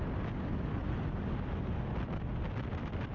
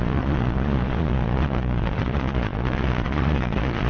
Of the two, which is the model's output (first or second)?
second